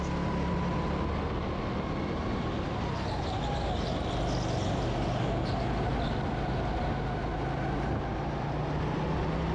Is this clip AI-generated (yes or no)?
no